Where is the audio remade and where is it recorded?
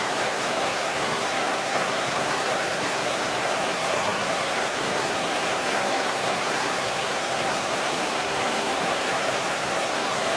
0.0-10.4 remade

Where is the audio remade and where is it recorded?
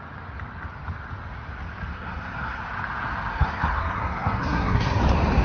0.0-1.9 recorded; 1.9-2.6 remade; 2.6-3.3 recorded; 3.3-5.0 remade; 5.0-5.4 recorded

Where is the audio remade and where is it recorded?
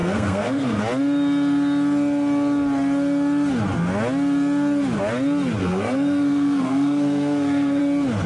0.0-0.8 remade; 0.8-5.6 recorded; 5.6-7.8 remade; 7.8-8.3 recorded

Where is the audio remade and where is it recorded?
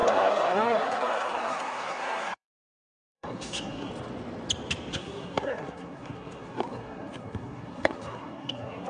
0.0-3.9 remade; 3.9-4.9 recorded; 4.9-8.9 remade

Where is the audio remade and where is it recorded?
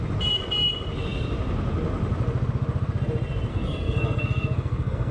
0.0-3.5 recorded; 3.5-5.1 remade